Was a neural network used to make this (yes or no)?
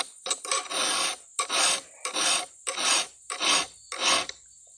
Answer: no